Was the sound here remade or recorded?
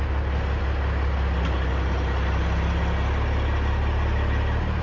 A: recorded